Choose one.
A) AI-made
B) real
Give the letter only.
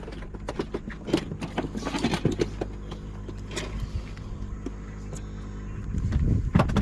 B